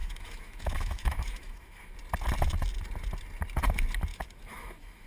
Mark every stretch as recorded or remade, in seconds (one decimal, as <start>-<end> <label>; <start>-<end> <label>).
0.0-1.9 remade; 1.9-4.1 recorded; 4.1-5.1 remade